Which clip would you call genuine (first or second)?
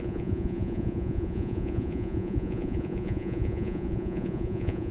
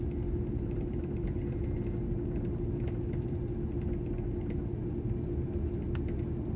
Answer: second